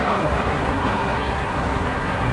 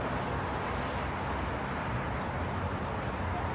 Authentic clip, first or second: second